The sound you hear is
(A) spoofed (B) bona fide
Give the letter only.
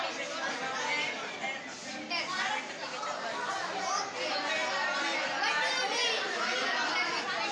B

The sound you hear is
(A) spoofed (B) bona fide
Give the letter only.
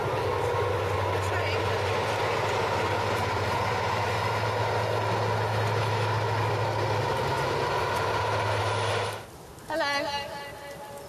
B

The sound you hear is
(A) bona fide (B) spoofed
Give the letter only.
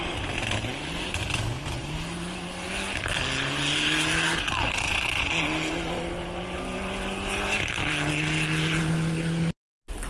A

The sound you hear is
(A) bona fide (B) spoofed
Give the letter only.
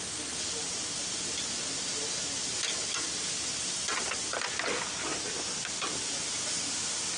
A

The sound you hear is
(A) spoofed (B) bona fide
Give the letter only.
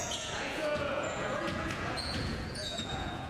A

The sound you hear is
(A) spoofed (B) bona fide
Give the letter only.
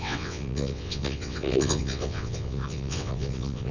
A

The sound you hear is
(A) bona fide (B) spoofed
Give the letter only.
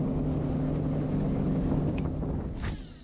A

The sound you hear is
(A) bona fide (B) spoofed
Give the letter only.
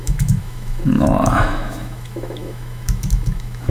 B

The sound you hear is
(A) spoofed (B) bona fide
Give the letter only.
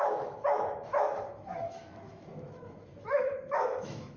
A